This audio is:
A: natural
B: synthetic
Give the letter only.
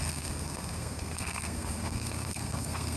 B